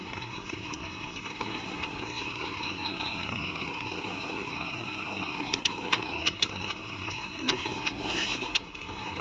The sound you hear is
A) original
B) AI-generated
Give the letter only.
B